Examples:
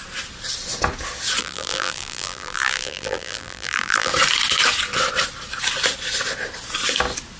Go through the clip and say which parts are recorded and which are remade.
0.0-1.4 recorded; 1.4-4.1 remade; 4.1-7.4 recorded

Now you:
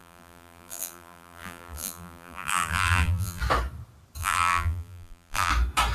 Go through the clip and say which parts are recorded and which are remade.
0.0-3.4 remade; 3.4-4.2 recorded; 4.2-5.5 remade; 5.5-5.9 recorded

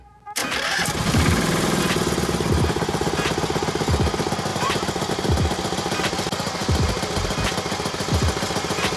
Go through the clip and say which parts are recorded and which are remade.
0.0-0.4 recorded; 0.4-1.8 remade; 1.8-4.5 recorded; 4.5-5.1 remade; 5.1-9.0 recorded

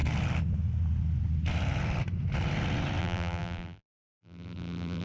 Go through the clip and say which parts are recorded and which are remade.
0.0-3.0 recorded; 3.0-5.0 remade